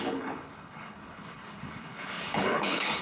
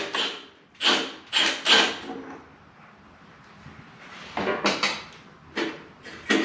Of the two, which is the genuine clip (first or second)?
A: second